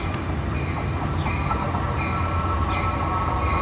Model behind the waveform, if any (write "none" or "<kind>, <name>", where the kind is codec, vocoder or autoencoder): none